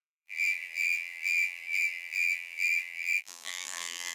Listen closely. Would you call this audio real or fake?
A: fake